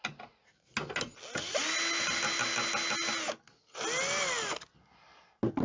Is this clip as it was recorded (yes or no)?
yes